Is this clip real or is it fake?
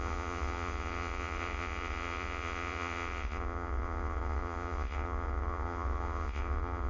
fake